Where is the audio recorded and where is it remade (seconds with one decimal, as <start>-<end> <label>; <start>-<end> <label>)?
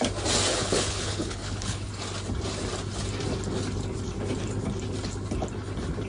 0.0-0.5 recorded; 0.5-1.9 remade; 1.9-6.1 recorded